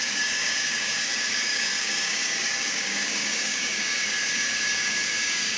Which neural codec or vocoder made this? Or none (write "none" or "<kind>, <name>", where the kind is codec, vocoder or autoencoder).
codec, DAC